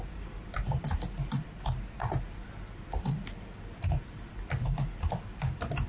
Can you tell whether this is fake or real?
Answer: real